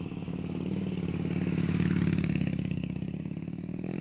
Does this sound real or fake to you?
fake